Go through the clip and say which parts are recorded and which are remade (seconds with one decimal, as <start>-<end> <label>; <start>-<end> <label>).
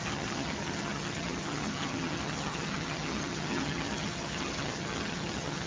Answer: 0.0-5.7 remade